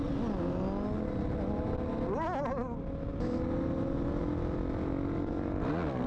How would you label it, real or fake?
real